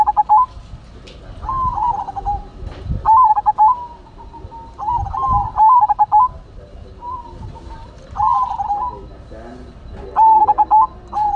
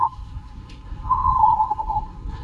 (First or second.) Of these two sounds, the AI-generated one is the second